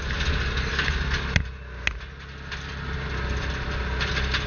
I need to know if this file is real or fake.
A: real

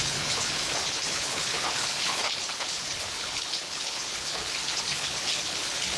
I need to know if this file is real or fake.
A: fake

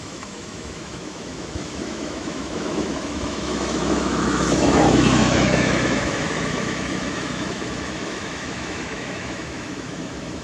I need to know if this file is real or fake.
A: fake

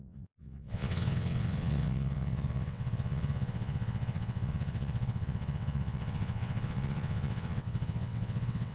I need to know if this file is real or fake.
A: fake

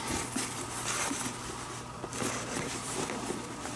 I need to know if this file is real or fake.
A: fake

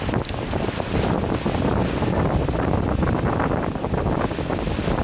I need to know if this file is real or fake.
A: real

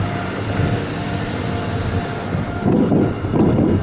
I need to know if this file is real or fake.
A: real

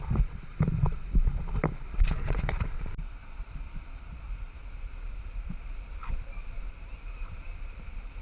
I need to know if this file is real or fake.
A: fake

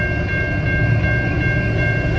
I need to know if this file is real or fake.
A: real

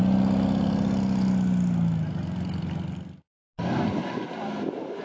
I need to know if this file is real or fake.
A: real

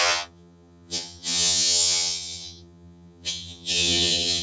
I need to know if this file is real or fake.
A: fake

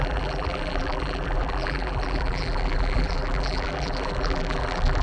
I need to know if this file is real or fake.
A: fake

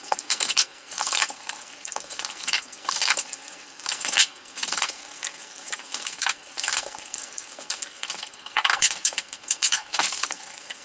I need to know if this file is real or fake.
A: fake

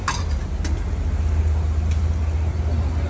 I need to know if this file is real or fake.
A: real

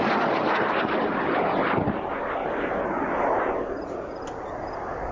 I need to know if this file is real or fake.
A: real